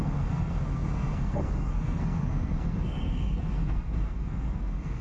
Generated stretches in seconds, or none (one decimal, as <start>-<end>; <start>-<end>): 0.0-5.0